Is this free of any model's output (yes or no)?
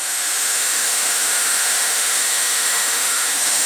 no